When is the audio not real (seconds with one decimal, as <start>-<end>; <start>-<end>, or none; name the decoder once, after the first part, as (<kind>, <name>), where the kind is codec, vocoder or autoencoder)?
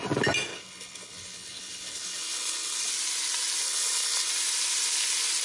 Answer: 0.5-2.9 (codec, HILCodec); 3.6-4.3